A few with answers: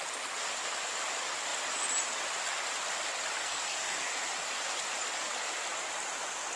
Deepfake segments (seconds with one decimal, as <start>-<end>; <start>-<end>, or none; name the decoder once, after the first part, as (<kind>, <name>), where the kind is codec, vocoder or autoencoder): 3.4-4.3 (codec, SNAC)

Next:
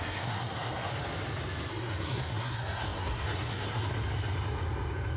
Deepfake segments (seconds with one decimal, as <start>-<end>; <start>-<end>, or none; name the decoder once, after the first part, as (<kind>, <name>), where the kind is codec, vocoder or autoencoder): 0.0-0.9 (codec, SNAC); 1.7-3.8

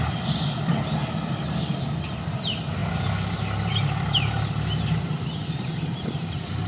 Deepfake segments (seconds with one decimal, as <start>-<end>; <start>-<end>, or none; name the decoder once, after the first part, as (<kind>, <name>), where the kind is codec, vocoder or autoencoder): none

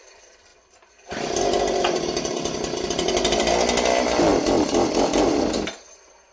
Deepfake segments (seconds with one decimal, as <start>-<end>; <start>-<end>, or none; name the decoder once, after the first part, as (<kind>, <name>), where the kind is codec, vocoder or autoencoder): none

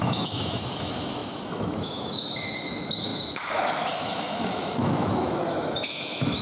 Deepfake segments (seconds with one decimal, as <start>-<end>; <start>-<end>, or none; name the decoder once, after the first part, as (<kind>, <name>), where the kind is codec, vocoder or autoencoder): 0.0-6.4 (autoencoder, DAC-VAE)

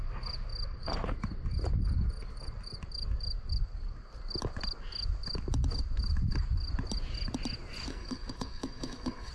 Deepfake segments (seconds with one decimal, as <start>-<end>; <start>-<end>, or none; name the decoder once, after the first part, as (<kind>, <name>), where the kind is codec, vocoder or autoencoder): 7.9-9.3 (codec, SNAC)

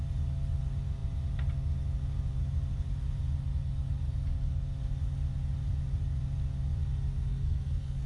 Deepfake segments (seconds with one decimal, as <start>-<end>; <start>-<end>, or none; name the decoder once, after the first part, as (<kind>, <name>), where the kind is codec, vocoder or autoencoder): 7.3-8.1 (codec, SNAC)